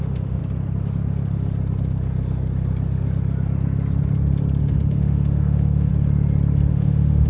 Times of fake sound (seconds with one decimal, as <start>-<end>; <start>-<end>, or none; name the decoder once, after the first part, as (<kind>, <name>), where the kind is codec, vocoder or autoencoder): 0.0-0.4 (autoencoder, DAC-VAE); 4.6-5.9; 6.7-7.3